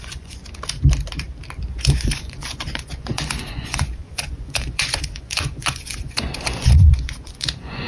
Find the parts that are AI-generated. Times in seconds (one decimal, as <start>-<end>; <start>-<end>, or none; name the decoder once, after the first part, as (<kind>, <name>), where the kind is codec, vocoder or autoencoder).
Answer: 0.0-0.4 (vocoder, Vocos); 1.7-7.9